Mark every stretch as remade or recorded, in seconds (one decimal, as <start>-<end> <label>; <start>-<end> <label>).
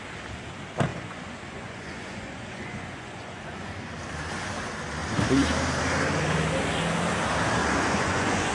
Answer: 0.0-0.9 recorded; 0.9-3.9 remade; 3.9-7.6 recorded; 7.6-8.5 remade